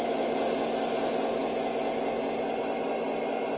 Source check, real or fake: real